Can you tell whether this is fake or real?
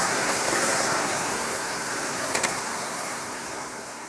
fake